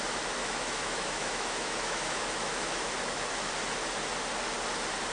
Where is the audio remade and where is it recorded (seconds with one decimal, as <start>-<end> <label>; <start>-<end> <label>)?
0.0-0.4 recorded; 0.4-3.5 remade; 3.5-5.1 recorded